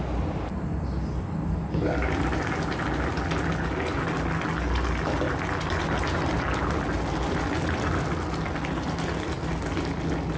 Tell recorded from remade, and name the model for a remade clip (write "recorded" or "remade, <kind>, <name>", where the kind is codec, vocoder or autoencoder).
recorded